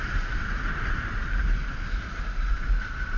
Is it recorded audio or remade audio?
recorded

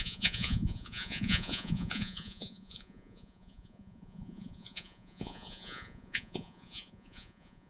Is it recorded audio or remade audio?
remade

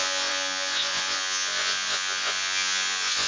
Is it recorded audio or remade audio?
remade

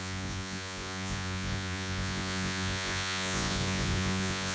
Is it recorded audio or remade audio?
remade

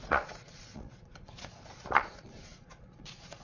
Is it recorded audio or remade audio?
remade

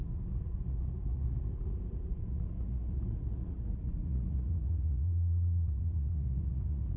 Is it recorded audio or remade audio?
remade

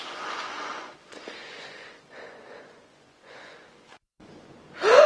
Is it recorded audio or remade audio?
remade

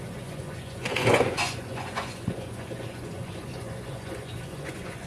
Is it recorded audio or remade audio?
remade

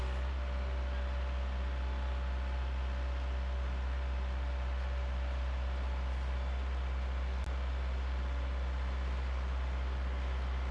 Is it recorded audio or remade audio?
recorded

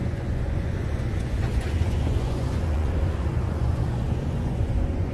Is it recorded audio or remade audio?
remade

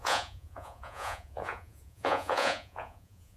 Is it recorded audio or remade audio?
remade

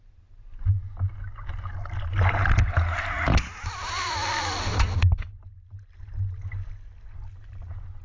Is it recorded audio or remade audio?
recorded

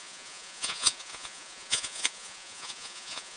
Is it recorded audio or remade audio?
remade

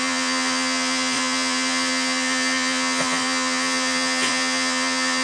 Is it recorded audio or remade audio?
remade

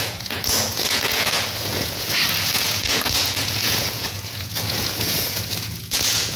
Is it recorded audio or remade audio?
remade